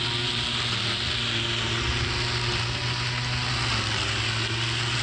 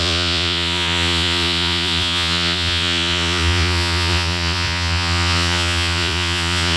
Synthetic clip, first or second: second